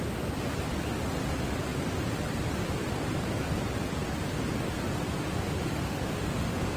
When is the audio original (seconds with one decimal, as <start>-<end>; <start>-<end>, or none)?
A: 0.0-5.5